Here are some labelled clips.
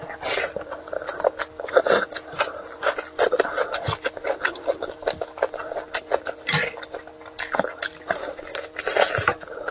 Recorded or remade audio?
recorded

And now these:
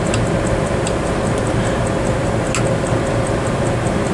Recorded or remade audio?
recorded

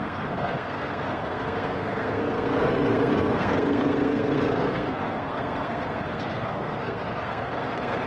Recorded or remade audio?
remade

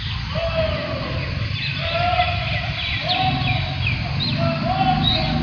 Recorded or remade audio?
recorded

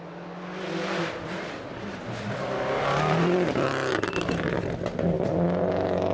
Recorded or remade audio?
recorded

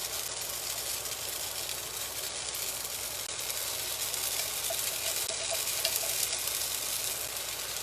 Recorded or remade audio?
recorded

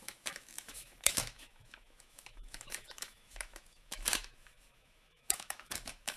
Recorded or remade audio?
remade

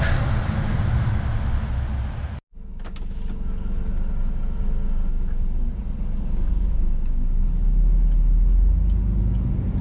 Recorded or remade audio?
recorded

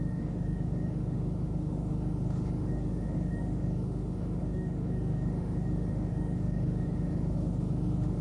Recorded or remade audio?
remade